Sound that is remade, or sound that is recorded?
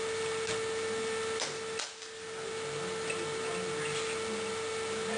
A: recorded